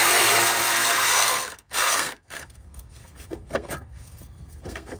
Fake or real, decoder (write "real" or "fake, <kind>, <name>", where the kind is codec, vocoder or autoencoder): fake, codec, SNAC